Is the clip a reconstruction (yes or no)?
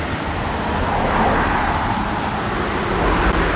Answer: no